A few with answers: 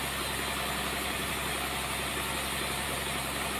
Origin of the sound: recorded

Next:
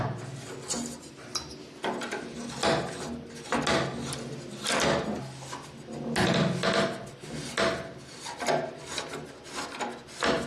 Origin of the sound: recorded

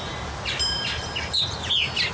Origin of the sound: recorded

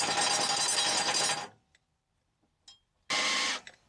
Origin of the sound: recorded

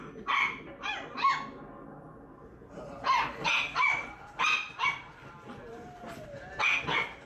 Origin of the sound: recorded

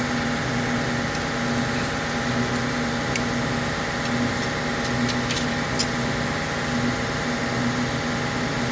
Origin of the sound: recorded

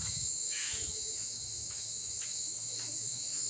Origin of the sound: remade